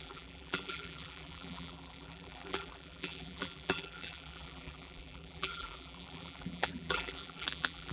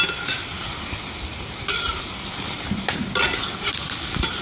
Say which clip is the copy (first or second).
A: first